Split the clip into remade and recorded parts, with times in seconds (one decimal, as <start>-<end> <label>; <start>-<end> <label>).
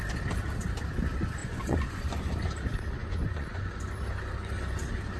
0.0-1.4 recorded; 1.4-2.3 remade; 2.3-3.0 recorded; 3.0-3.8 remade; 3.8-5.2 recorded